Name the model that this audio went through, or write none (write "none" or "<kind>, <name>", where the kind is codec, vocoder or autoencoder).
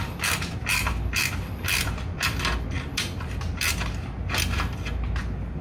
vocoder, BigVGAN v2